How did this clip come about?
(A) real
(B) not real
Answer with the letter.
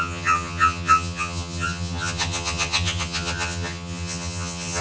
B